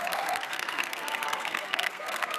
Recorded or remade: remade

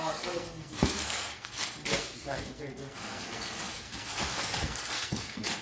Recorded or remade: remade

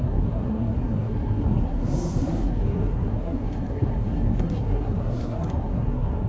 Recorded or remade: remade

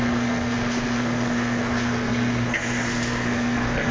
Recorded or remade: remade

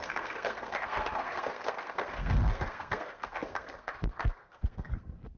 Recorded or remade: remade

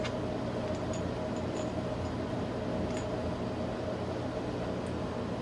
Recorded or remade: recorded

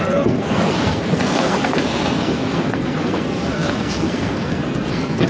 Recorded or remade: remade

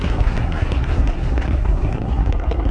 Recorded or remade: remade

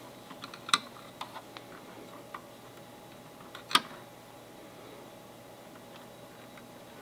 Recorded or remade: recorded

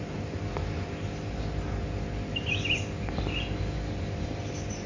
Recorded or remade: recorded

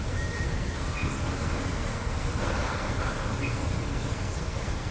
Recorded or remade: remade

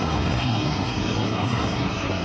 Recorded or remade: remade